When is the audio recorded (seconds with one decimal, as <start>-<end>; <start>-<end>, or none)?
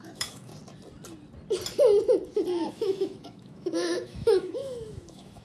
0.5-2.7